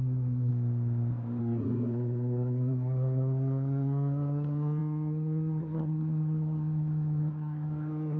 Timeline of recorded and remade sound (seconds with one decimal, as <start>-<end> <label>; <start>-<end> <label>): 0.0-0.5 remade; 0.5-1.4 recorded; 1.4-8.2 remade

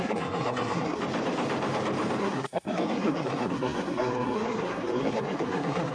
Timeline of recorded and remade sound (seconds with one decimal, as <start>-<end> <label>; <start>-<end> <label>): 0.0-1.0 remade; 1.0-2.2 recorded; 2.2-5.9 remade

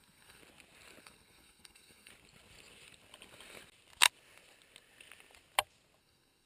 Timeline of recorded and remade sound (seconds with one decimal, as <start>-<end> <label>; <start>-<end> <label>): 0.0-0.4 remade; 0.4-1.0 recorded; 1.0-2.1 remade; 2.1-6.0 recorded; 6.0-6.5 remade

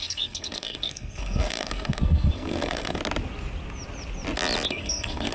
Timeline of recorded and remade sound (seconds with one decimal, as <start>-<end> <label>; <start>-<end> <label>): 0.0-3.0 remade; 3.0-4.7 recorded; 4.7-5.3 remade

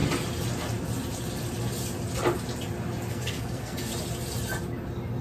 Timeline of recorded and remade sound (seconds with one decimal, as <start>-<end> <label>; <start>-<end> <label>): 0.0-3.1 recorded; 3.1-3.9 remade; 3.9-5.2 recorded